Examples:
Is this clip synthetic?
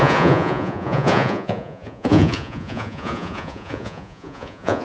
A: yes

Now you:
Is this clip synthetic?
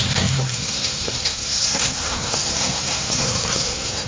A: yes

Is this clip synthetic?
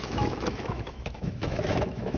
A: yes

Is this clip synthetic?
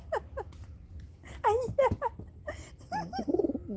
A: no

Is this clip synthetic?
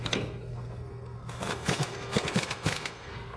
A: yes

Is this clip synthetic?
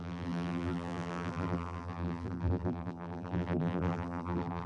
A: yes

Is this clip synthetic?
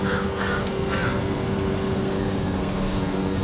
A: yes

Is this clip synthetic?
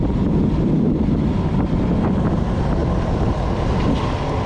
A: no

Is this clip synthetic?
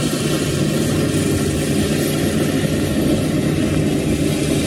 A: no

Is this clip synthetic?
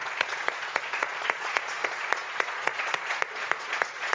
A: yes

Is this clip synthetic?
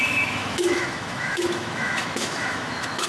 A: yes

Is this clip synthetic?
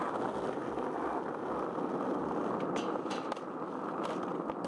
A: no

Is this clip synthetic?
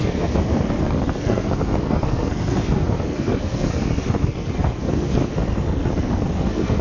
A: yes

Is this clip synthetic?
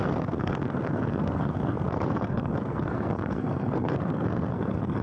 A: yes